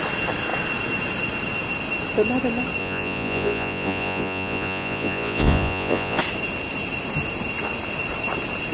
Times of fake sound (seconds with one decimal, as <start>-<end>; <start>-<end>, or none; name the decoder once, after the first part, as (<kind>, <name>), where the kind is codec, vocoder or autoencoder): 2.8-6.2 (vocoder, Vocos)